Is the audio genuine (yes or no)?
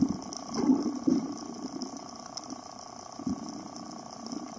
yes